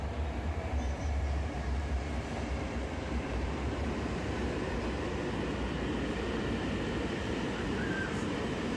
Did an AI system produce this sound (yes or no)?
yes